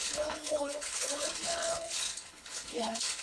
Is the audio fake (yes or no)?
yes